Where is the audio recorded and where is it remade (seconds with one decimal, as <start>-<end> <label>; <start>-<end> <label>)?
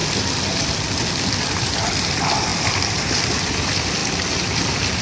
0.0-1.4 recorded; 1.4-4.0 remade; 4.0-5.0 recorded